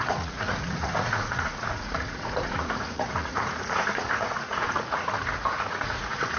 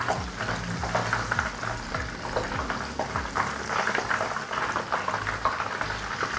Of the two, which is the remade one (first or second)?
first